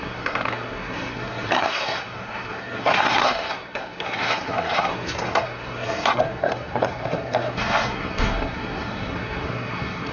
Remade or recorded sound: remade